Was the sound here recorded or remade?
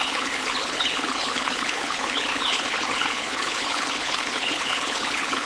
remade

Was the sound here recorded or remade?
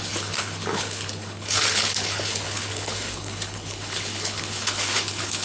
remade